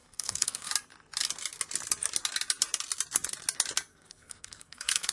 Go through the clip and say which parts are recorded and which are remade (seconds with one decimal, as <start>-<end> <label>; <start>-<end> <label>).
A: 0.0-0.7 remade; 0.7-3.9 recorded; 3.9-5.1 remade